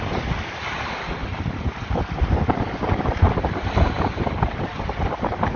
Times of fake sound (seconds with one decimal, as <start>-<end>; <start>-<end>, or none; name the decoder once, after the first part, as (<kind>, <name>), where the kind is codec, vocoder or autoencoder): 0.0-5.6 (vocoder, BigVGAN v2)